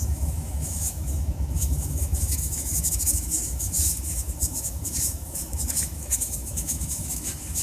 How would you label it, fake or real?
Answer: fake